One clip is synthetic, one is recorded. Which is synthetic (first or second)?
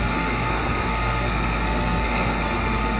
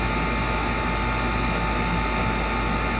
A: first